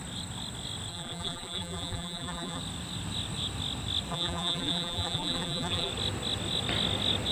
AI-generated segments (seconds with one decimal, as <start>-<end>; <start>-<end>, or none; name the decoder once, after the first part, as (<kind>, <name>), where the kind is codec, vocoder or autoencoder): 0.9-2.6 (vocoder, BigVGAN v2); 4.1-5.9